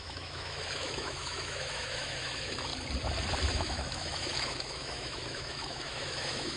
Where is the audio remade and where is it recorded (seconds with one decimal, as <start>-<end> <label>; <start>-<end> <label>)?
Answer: 0.0-2.7 remade; 2.7-3.5 recorded; 3.5-6.6 remade